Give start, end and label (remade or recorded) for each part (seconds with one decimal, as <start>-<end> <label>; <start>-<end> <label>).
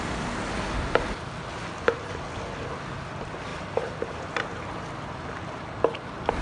0.0-3.5 recorded; 3.5-4.7 remade; 4.7-6.4 recorded